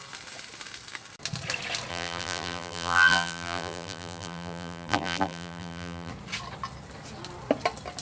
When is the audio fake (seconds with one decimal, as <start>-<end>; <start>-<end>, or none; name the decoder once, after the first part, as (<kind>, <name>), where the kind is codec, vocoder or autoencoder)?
1.9-6.1 (vocoder, BigVGAN v2)